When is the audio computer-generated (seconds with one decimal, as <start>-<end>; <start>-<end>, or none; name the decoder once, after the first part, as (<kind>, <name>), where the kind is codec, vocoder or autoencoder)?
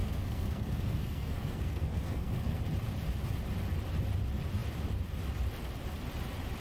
0.0-2.6 (codec, SNAC)